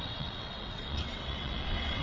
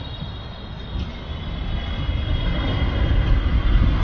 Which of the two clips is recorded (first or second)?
second